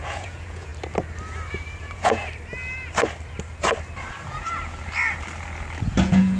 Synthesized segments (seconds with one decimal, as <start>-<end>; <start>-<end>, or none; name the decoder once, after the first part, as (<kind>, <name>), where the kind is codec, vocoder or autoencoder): 0.0-0.7 (vocoder, Vocos); 1.8-2.2; 6.0-6.4